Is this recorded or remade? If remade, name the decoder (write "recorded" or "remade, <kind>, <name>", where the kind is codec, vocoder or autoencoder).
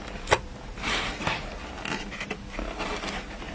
recorded